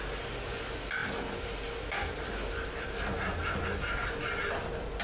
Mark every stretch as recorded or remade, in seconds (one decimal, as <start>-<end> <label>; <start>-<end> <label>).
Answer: 0.0-5.0 recorded